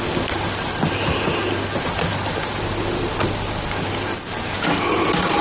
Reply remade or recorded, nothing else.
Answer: recorded